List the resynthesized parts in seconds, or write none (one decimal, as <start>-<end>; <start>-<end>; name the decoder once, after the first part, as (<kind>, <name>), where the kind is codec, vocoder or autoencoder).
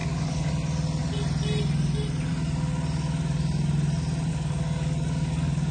0.0-0.5 (codec, DAC); 4.3-5.7